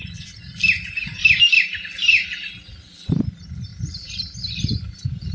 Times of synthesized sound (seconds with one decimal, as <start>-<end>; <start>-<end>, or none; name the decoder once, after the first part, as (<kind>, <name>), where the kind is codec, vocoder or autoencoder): 0.0-5.3 (vocoder, BigVGAN v2)